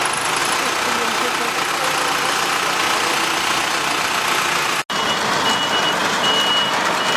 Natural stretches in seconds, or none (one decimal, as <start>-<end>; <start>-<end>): 0.0-6.0; 6.5-7.2